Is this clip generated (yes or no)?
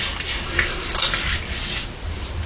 no